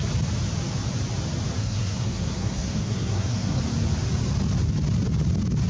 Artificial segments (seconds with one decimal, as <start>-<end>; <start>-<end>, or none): 1.6-3.6